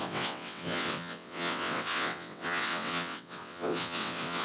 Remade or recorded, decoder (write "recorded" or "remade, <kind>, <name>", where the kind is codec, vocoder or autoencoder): remade, vocoder, WaveNeXt